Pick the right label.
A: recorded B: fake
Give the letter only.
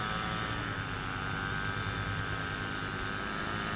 A